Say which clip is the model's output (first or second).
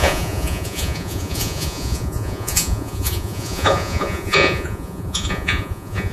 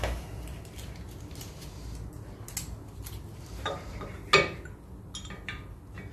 first